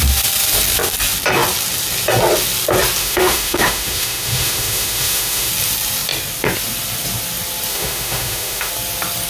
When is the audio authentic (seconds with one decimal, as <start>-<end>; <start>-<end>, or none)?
0.0-3.0; 5.5-7.7; 8.7-9.3